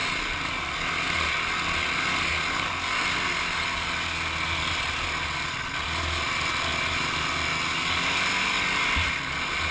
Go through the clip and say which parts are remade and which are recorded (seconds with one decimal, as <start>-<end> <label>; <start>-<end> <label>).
0.0-9.7 recorded